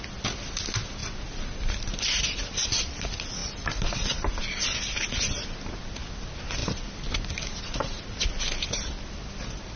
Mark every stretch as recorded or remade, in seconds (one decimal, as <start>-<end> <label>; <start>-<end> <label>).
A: 0.0-9.8 recorded